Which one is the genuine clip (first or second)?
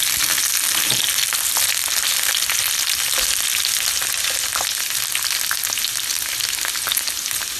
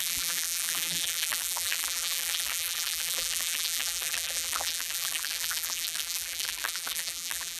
first